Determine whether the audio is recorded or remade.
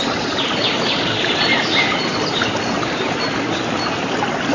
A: recorded